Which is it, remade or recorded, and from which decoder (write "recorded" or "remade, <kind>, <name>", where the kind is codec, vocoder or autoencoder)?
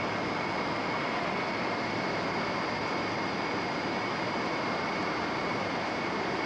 recorded